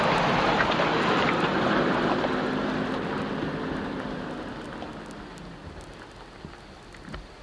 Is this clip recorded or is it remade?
recorded